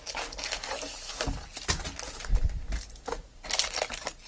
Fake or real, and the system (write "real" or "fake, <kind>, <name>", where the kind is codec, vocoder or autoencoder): real